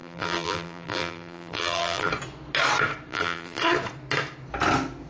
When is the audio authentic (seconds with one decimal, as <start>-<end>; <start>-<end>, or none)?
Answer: 2.1-3.1; 3.6-5.1